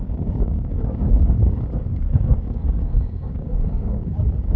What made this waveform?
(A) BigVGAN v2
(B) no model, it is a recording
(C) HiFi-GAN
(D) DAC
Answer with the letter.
D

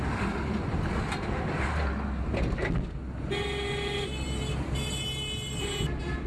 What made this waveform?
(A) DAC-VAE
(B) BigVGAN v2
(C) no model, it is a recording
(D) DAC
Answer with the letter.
C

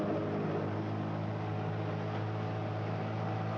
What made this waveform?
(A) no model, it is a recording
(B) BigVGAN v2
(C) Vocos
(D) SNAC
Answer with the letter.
A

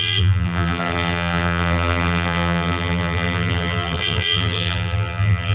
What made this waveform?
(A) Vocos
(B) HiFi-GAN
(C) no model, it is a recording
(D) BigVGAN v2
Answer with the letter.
D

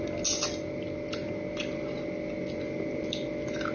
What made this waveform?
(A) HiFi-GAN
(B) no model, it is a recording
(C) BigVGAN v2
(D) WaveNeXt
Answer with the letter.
B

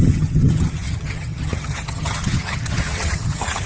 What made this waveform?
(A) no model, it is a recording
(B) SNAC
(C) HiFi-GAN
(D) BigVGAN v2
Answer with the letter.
C